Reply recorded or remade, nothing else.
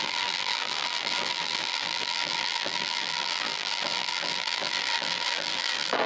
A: remade